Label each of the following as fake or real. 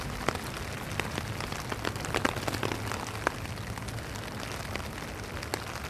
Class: real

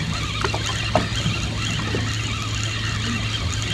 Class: real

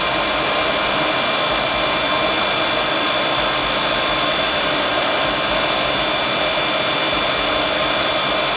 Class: real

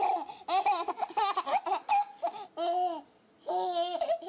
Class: real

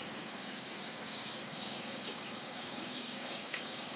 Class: fake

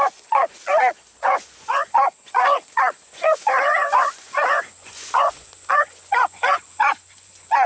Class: fake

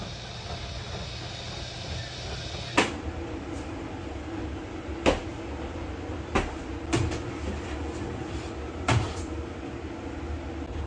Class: real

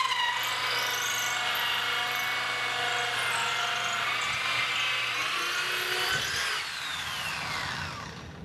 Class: real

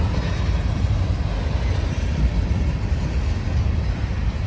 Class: real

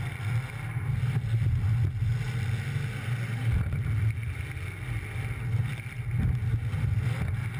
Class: real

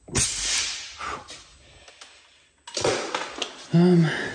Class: real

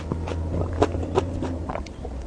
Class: real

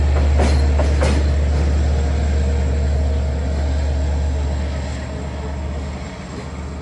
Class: real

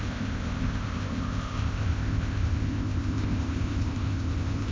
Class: fake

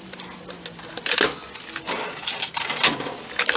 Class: real